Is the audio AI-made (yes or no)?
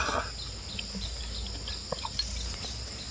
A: no